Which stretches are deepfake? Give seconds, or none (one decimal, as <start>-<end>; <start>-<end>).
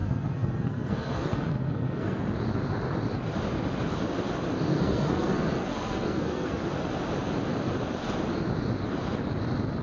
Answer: 0.0-2.2; 4.7-6.6